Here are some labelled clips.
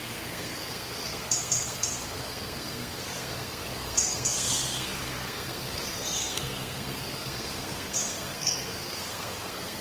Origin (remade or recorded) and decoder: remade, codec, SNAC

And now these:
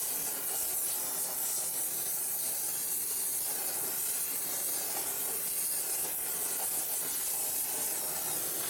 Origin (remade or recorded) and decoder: recorded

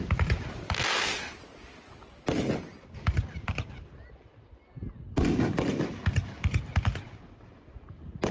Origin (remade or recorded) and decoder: recorded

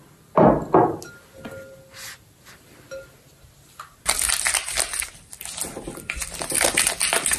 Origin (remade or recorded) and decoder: recorded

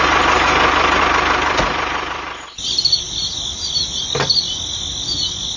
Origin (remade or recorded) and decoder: recorded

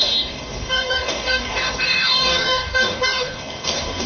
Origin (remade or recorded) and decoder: remade, codec, DAC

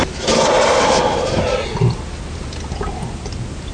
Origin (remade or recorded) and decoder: recorded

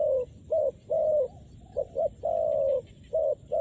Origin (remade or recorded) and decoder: recorded